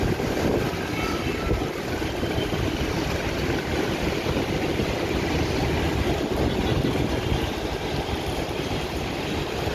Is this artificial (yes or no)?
no